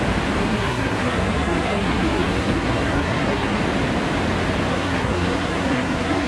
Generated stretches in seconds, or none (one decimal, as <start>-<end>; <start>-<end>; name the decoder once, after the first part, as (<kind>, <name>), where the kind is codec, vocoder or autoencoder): 0.4-3.6 (codec, SNAC); 4.7-6.3